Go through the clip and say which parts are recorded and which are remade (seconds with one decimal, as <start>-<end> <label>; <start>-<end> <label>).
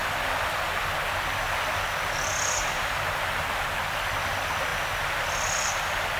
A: 0.0-6.2 recorded